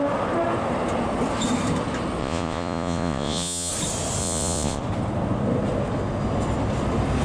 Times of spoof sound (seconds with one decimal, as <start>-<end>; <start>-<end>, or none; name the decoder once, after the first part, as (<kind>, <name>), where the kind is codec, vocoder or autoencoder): 2.2-3.7 (vocoder, Vocos); 4.2-4.8